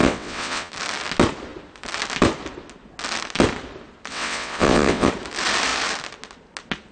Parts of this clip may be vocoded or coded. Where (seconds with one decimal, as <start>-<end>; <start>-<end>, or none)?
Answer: 0.0-0.7; 4.1-5.1